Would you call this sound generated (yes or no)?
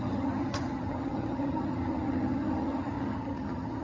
yes